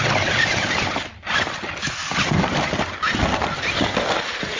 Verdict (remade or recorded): recorded